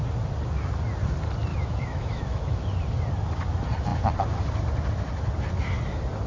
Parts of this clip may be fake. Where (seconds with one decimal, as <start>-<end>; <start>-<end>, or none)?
1.5-2.7